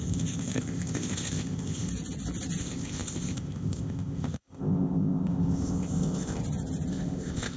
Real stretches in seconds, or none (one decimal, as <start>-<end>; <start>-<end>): 1.9-2.6; 6.4-6.9